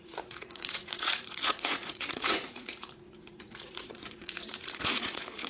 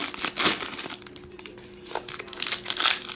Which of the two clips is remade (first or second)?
first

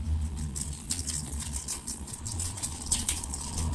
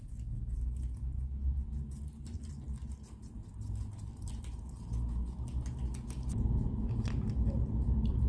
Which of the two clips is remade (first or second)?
first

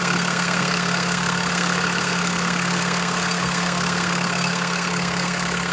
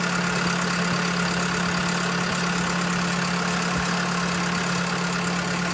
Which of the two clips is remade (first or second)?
first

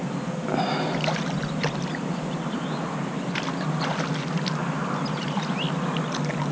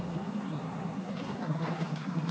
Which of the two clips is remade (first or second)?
second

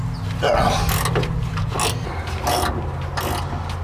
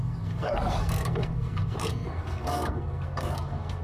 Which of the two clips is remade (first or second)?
second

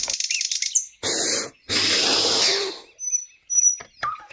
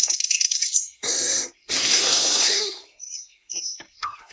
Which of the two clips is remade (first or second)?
second